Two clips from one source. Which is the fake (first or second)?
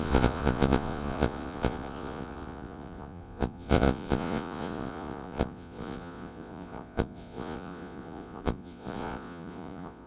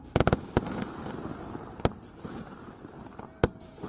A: first